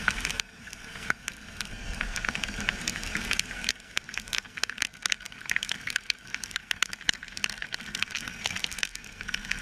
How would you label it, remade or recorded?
remade